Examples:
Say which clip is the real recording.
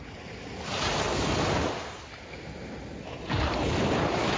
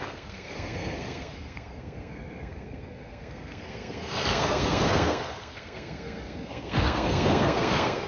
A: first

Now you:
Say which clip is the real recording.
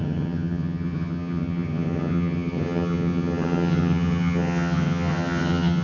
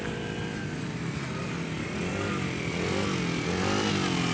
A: second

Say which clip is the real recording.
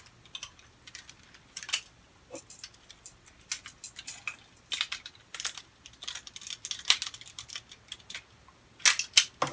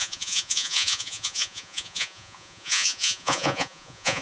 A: first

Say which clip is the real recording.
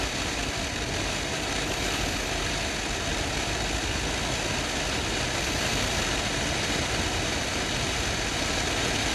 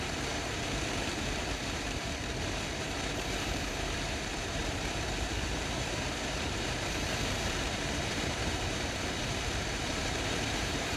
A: first